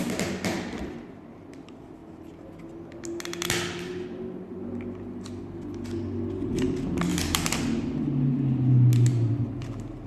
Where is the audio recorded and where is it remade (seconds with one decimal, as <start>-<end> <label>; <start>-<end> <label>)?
0.0-7.1 recorded; 7.1-8.0 remade; 8.0-10.1 recorded